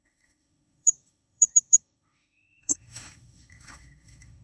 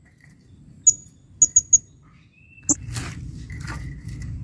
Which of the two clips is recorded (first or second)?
second